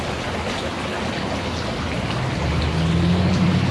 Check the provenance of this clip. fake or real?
real